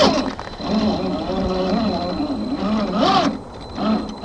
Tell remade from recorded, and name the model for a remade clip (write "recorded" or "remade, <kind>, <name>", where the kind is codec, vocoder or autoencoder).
recorded